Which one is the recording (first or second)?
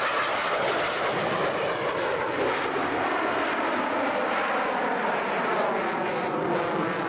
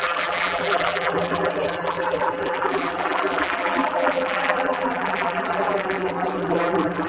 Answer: first